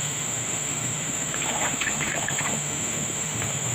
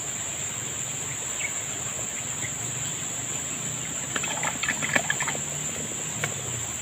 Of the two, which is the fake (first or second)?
first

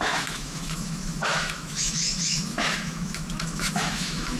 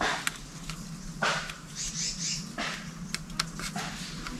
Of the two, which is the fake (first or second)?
first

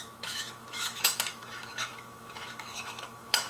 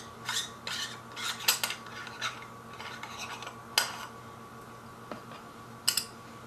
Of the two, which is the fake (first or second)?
first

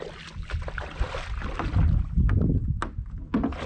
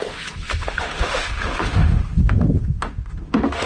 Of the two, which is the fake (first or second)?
second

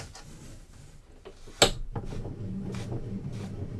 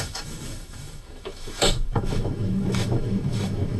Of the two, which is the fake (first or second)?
second